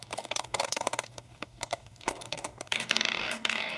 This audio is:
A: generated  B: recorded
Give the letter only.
A